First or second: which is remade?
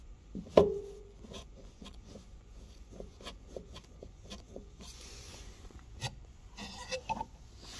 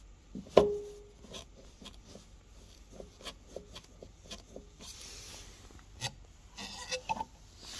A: first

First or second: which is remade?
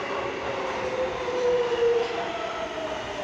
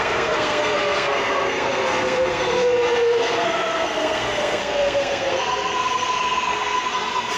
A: second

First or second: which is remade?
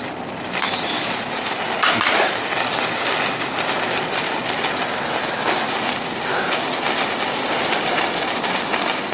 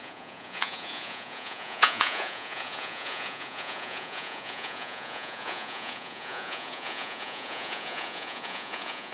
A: second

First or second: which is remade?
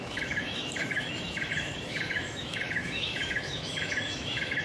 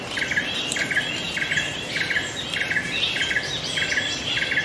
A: first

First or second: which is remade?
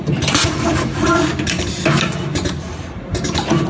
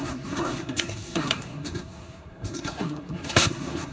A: second